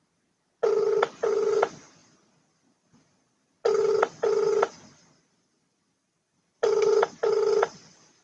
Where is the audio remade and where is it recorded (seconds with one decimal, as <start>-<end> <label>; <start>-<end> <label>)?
0.0-8.2 recorded